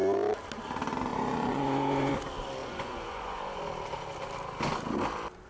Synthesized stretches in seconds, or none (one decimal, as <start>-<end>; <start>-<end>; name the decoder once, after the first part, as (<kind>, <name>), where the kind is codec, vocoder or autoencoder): 1.1-2.1 (vocoder, Vocos); 2.6-3.6